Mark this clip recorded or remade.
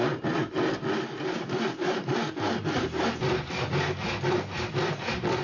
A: recorded